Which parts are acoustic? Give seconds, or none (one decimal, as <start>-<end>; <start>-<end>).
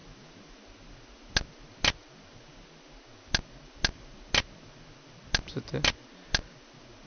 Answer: 0.0-7.1